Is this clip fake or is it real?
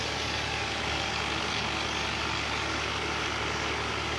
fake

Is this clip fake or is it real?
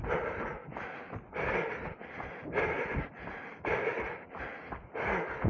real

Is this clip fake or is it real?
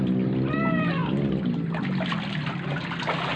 real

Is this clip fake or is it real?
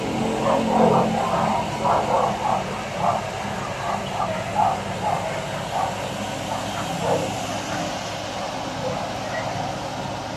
real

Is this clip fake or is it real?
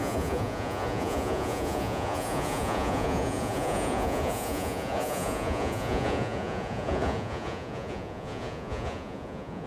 fake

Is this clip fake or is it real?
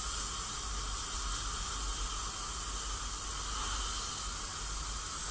real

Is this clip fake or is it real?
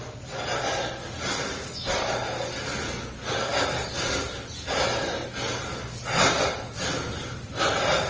real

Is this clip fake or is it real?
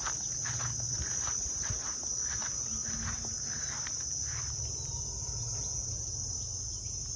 real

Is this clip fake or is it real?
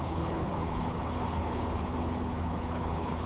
fake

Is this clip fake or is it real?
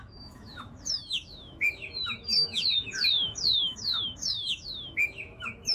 fake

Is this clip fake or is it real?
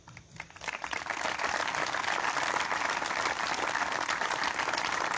real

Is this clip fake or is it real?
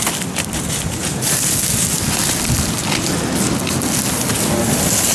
real